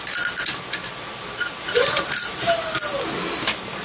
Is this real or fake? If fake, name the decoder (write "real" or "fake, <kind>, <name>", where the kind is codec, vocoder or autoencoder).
real